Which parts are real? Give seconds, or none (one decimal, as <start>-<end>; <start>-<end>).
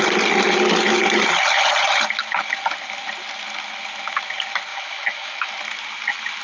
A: 0.0-4.7; 5.5-6.4